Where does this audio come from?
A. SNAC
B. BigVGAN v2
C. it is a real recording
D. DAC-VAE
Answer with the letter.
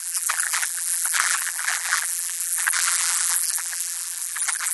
B